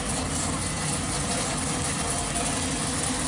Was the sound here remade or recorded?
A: recorded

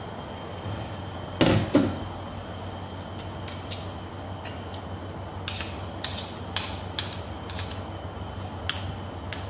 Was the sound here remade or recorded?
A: recorded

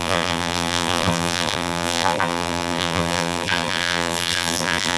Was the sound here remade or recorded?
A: remade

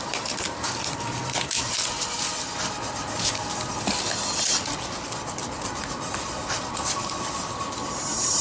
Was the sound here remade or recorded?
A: recorded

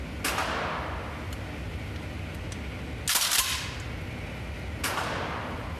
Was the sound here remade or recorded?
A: recorded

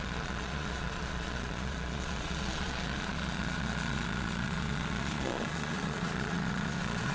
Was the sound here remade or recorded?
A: remade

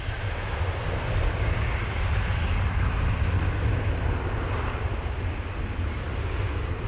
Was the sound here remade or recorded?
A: recorded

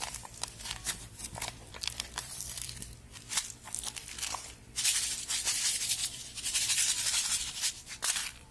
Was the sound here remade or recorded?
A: remade